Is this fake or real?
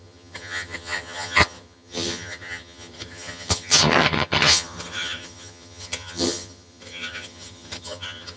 fake